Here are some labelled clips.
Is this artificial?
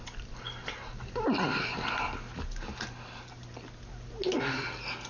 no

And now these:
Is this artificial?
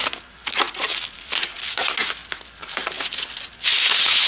no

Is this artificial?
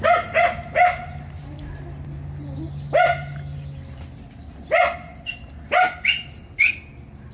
no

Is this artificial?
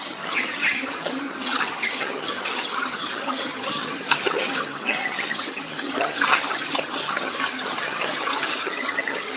yes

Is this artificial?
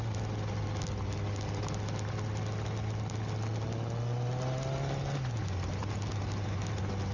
no